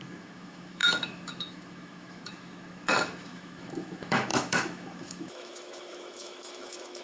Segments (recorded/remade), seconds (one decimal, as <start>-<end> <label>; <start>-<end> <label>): 0.0-7.0 remade